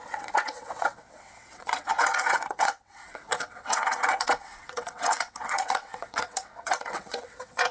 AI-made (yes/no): yes